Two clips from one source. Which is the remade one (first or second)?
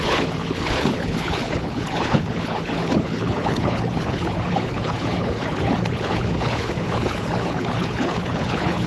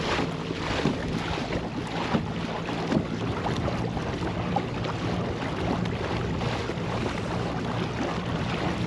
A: first